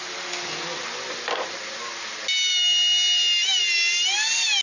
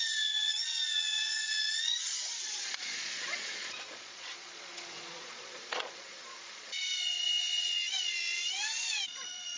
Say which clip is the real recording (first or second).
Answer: first